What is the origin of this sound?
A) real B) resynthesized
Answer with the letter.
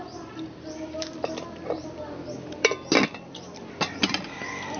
B